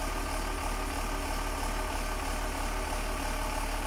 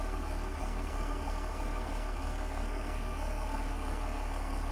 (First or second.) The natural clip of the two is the first